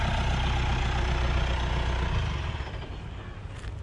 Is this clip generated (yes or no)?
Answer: no